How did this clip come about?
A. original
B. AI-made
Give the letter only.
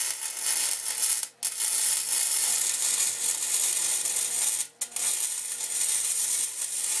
A